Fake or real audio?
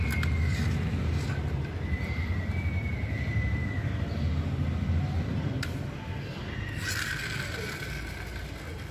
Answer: real